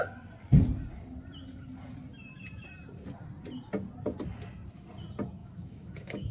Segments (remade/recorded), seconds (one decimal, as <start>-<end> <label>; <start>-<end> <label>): 0.0-5.4 recorded; 5.4-6.3 remade